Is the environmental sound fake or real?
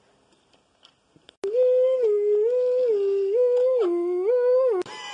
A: real